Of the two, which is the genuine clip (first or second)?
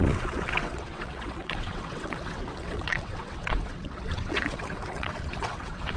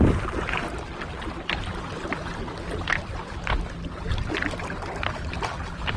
second